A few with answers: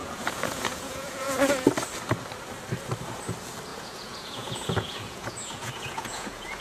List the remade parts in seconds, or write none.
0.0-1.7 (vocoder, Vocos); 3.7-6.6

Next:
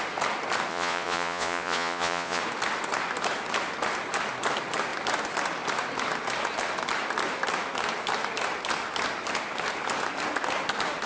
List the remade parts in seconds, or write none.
0.7-2.4 (vocoder, Vocos)

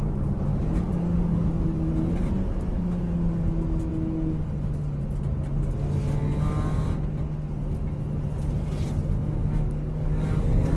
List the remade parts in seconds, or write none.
0.5-1.9 (codec, DAC); 9.4-10.4

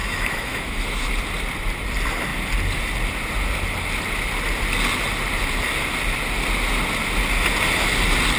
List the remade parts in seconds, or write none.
0.0-1.1 (autoencoder, DAC-VAE)

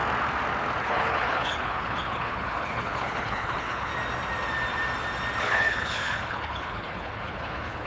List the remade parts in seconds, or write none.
0.8-3.9 (codec, HILCodec); 5.4-7.9

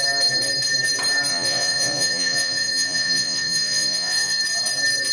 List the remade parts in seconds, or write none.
1.3-4.4 (vocoder, Vocos)